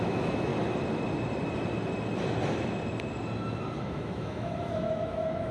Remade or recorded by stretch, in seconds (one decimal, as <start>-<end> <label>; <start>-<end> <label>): 0.0-0.5 remade; 0.5-3.8 recorded; 3.8-5.5 remade

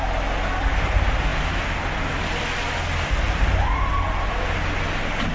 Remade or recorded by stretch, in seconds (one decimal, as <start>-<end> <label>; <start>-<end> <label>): 0.0-5.3 recorded

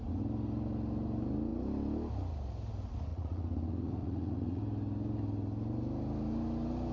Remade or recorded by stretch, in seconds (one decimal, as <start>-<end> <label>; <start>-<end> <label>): 0.0-3.1 recorded; 3.1-4.6 remade; 4.6-6.9 recorded

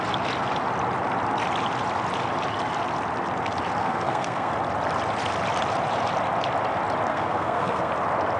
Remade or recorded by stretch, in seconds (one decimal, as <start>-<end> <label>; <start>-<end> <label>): 0.0-3.8 recorded; 3.8-4.5 remade; 4.5-7.1 recorded; 7.1-7.9 remade; 7.9-8.4 recorded